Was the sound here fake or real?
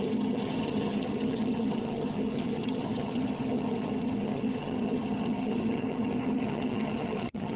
fake